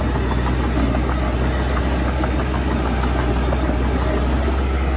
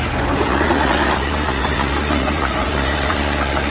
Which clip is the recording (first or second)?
first